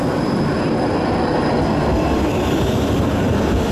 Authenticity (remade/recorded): recorded